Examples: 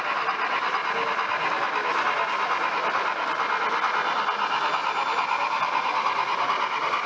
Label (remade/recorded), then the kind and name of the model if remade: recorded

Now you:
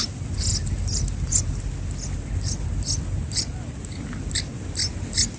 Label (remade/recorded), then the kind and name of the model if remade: recorded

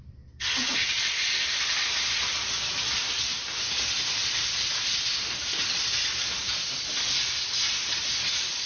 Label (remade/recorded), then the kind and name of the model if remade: remade, vocoder, BigVGAN v2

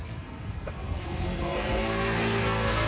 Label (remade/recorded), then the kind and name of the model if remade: remade, codec, SNAC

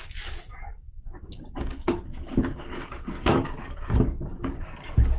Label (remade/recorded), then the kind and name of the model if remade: remade, codec, DAC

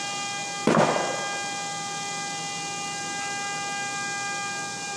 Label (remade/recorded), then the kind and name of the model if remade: recorded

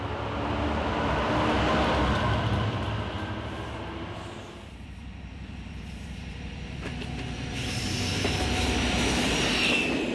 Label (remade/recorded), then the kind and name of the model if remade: recorded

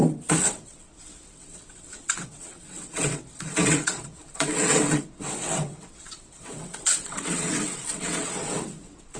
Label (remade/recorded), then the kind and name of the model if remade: remade, vocoder, WaveNeXt